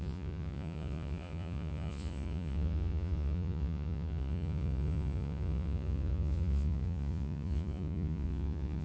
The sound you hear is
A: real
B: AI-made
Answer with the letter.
B